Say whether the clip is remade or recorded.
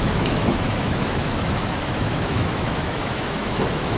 remade